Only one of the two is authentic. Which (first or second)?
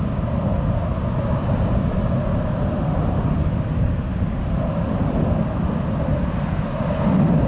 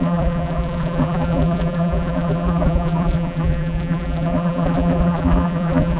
first